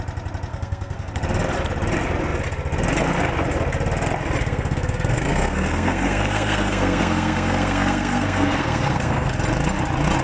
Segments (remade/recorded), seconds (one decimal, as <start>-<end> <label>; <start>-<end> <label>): 0.0-0.5 recorded; 0.5-1.1 remade; 1.1-4.4 recorded; 4.4-9.3 remade; 9.3-10.2 recorded